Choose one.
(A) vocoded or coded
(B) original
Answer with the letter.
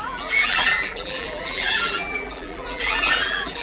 A